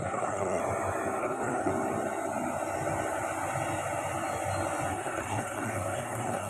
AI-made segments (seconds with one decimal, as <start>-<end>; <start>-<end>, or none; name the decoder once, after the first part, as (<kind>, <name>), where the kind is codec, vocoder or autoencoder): 0.0-0.6 (codec, SNAC); 1.2-1.7; 4.9-6.5